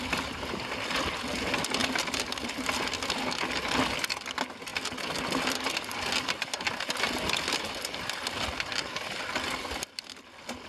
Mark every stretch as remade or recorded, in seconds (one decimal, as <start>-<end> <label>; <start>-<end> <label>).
0.0-10.7 recorded